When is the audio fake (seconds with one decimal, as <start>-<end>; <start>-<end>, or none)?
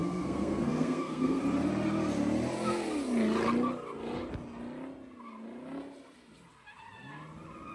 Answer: 0.0-1.4